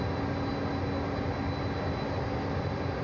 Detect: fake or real real